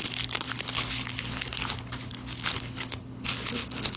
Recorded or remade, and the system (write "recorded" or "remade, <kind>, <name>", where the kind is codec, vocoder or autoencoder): remade, codec, HILCodec